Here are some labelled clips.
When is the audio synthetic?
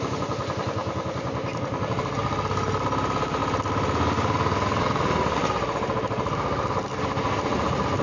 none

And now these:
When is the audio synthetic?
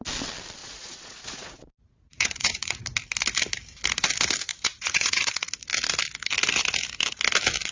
0.6-2.8 (vocoder, Vocos); 4.5-5.5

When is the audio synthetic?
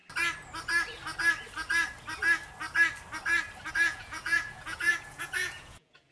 3.7-6.1 (vocoder, Vocos)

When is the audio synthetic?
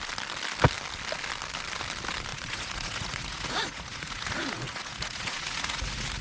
2.3-6.2 (vocoder, Vocos)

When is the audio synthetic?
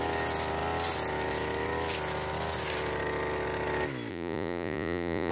4.1-5.3 (vocoder, Vocos)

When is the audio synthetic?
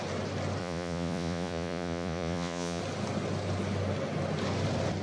0.6-2.8 (vocoder, Vocos)